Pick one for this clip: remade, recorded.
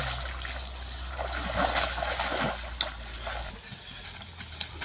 recorded